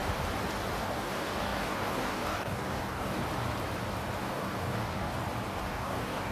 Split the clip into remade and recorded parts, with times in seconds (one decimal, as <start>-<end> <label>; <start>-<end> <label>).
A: 0.0-0.8 recorded; 0.8-3.2 remade; 3.2-4.2 recorded; 4.2-5.1 remade; 5.1-5.6 recorded; 5.6-6.3 remade